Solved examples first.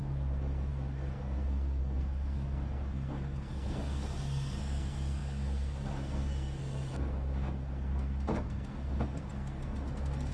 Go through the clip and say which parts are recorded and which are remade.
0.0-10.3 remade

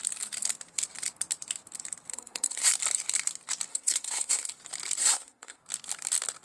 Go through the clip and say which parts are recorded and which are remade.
0.0-2.1 recorded; 2.1-2.7 remade; 2.7-3.7 recorded; 3.7-4.5 remade; 4.5-5.0 recorded; 5.0-5.6 remade; 5.6-6.4 recorded

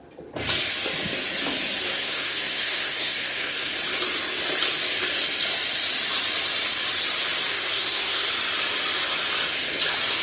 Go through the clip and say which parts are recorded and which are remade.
0.0-1.9 recorded; 1.9-3.7 remade; 3.7-7.5 recorded; 7.5-8.3 remade; 8.3-10.2 recorded

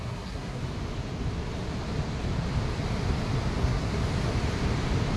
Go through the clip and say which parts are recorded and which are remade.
0.0-0.6 remade; 0.6-3.6 recorded; 3.6-4.0 remade; 4.0-5.2 recorded

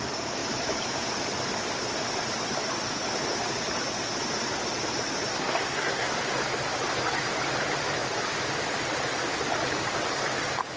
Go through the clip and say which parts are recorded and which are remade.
0.0-5.3 recorded; 5.3-6.2 remade; 6.2-10.8 recorded

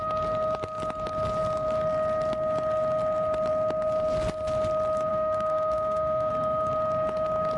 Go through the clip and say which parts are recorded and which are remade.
0.0-5.1 recorded; 5.1-6.3 remade; 6.3-7.6 recorded

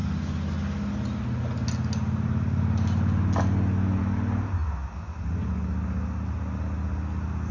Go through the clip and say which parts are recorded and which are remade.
0.0-7.5 recorded

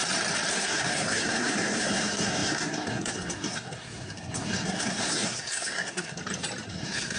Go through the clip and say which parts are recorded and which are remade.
0.0-0.5 recorded; 0.5-6.2 remade; 6.2-6.7 recorded; 6.7-7.2 remade